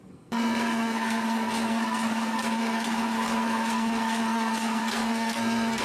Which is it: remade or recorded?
remade